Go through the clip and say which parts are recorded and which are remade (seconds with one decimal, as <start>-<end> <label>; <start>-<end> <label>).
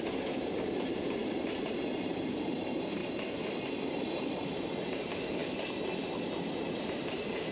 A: 0.0-3.0 remade; 3.0-3.7 recorded; 3.7-5.4 remade; 5.4-6.1 recorded; 6.1-7.5 remade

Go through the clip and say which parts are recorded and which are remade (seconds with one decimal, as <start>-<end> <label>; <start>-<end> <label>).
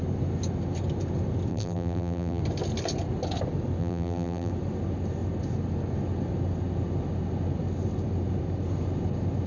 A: 0.0-1.5 recorded; 1.5-2.4 remade; 2.4-3.8 recorded; 3.8-4.5 remade; 4.5-9.5 recorded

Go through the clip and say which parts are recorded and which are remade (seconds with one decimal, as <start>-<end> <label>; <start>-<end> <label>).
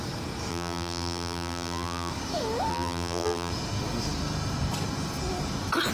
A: 0.0-0.5 recorded; 0.5-2.1 remade; 2.1-2.7 recorded; 2.7-3.5 remade; 3.5-5.9 recorded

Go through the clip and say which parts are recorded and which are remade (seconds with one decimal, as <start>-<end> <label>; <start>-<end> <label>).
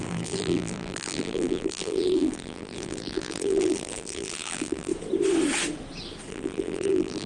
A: 0.0-4.9 remade; 4.9-6.3 recorded; 6.3-7.3 remade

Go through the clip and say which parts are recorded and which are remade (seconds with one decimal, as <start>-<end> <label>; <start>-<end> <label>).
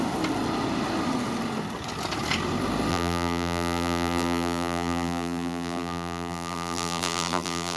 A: 0.0-2.9 recorded; 2.9-7.8 remade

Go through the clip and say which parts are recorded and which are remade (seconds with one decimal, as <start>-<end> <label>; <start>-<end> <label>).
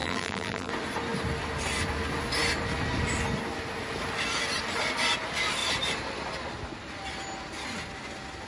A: 0.0-0.7 remade; 0.7-8.5 recorded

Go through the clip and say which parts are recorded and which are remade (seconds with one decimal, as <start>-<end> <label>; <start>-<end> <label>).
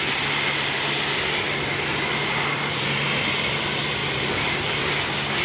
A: 0.0-2.2 recorded; 2.2-3.3 remade; 3.3-4.0 recorded; 4.0-4.9 remade; 4.9-5.4 recorded